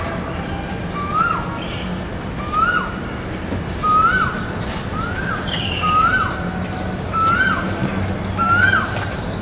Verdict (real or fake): real